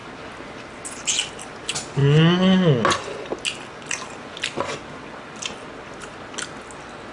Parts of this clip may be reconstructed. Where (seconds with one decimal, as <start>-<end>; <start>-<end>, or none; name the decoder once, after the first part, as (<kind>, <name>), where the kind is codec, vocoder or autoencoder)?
none